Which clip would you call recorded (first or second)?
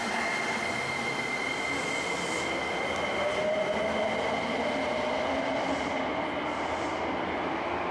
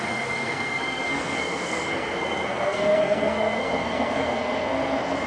first